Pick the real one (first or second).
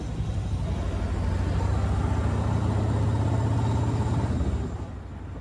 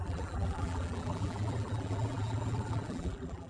first